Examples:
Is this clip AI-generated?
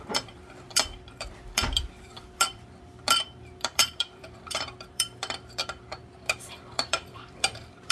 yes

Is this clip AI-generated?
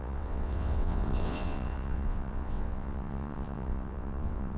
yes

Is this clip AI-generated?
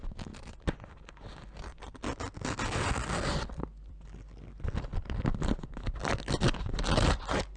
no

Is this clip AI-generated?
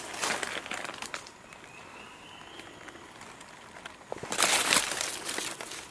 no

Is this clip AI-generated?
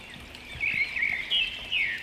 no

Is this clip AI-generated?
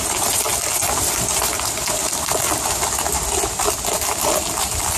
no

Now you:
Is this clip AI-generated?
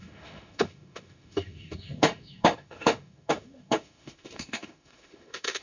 yes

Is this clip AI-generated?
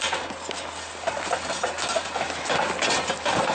no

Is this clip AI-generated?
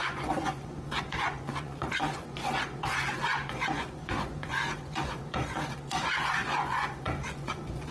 yes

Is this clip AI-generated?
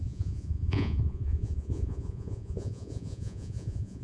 yes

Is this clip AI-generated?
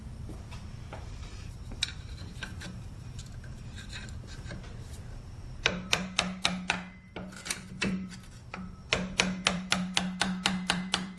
yes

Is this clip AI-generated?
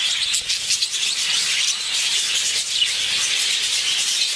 no